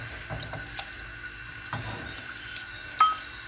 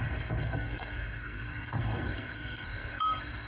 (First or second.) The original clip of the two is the first